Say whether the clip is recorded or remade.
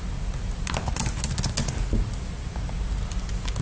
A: recorded